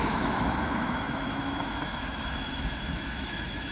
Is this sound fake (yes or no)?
yes